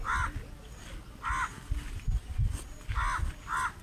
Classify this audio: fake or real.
real